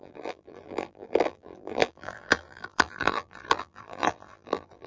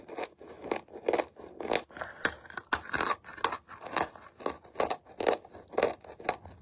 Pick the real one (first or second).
second